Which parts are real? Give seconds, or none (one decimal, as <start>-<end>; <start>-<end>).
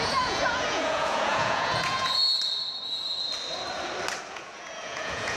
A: 2.2-4.3